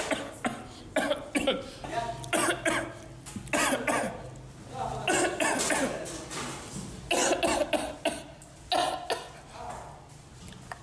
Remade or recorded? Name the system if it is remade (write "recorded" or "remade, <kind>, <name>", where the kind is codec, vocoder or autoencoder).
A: recorded